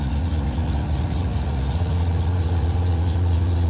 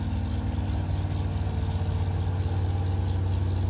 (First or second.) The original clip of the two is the second